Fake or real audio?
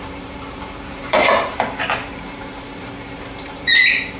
fake